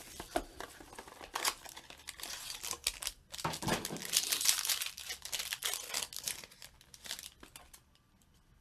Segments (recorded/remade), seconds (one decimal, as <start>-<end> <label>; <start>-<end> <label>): 0.0-8.6 recorded